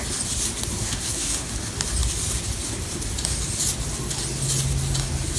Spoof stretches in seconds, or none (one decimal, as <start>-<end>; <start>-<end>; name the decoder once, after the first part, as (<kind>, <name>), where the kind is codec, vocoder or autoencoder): 0.7-1.5 (codec, SNAC)